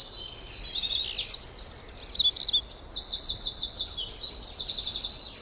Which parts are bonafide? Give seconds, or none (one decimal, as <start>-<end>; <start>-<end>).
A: 0.0-5.4